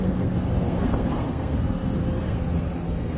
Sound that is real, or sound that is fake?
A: fake